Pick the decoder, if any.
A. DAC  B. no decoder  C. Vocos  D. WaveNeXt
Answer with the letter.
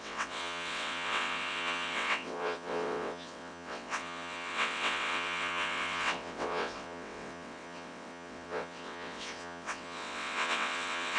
D